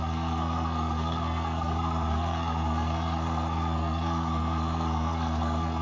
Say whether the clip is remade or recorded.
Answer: remade